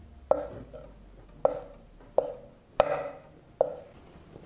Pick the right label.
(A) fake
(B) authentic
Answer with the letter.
B